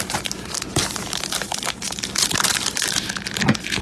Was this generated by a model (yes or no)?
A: yes